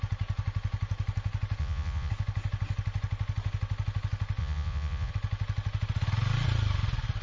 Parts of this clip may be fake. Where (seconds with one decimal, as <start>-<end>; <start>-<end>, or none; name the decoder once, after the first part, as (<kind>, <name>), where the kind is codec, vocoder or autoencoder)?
1.6-2.1 (vocoder, Vocos); 4.4-5.1